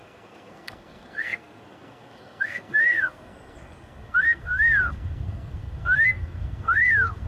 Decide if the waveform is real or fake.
fake